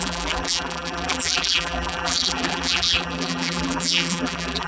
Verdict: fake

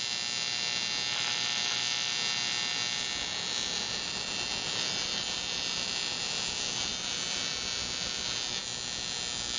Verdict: real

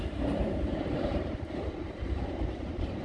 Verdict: fake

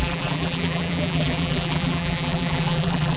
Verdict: fake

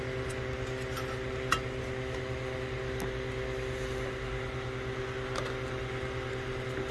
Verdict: real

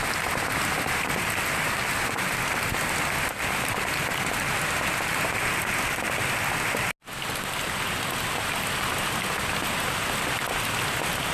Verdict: real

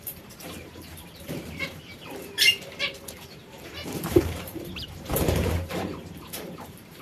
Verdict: fake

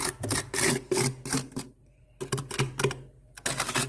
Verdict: real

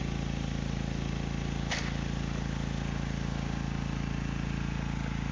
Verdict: real